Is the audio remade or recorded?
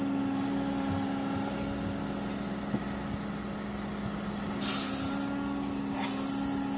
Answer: recorded